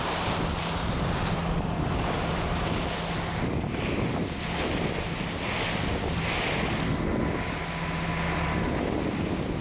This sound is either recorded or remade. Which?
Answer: recorded